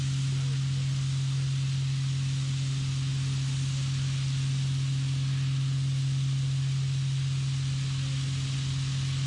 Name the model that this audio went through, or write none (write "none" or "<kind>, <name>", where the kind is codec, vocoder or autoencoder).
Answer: none